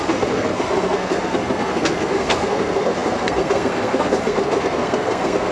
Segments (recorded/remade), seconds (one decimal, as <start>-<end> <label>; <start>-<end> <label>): 0.0-5.5 remade